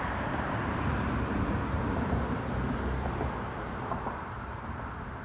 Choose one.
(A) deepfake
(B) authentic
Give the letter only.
A